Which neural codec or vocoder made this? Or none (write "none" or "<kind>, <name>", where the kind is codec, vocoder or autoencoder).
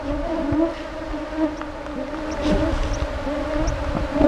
none